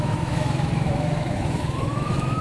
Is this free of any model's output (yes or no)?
no